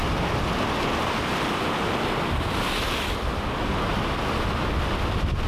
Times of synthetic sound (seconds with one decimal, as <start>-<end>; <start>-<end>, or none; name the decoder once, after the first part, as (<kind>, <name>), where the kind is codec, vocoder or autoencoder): none